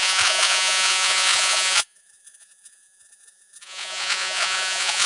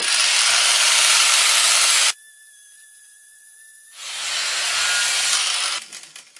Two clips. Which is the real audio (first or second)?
second